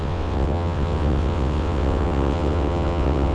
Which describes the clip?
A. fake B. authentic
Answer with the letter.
A